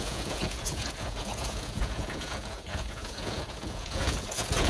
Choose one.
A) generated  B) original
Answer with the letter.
A